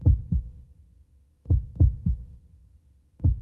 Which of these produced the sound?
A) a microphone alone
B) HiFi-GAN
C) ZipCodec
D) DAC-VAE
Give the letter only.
D